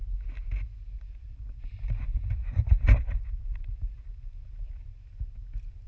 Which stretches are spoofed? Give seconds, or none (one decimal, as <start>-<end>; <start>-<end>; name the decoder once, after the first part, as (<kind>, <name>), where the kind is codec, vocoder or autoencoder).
1.2-4.7 (vocoder, BigVGAN v2)